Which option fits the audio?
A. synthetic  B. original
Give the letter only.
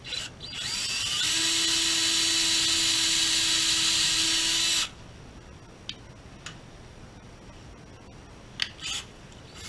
B